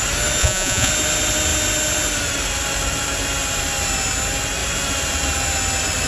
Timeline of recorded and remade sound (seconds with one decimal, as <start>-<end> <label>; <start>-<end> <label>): 0.0-0.4 recorded; 0.4-0.9 remade; 0.9-6.1 recorded